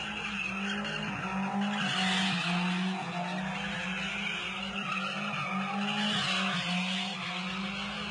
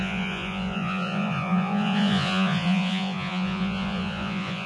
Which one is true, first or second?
first